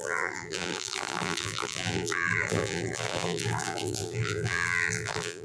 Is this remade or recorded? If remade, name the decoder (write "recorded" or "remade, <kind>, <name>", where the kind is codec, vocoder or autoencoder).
remade, vocoder, BigVGAN v2